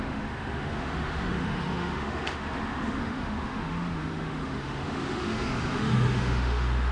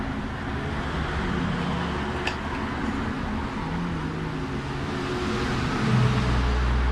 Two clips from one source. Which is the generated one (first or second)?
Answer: first